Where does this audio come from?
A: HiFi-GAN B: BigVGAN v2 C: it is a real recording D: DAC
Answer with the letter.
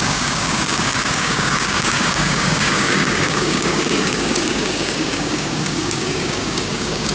D